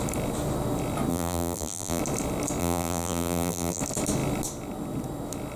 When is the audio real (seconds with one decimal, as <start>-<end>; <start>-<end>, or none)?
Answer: 0.0-1.1; 2.0-2.6; 3.8-5.6